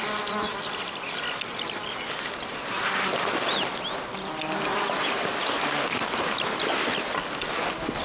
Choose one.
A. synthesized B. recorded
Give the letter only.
B